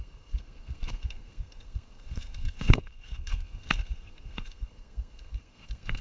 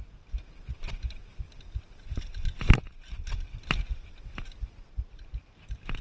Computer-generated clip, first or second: first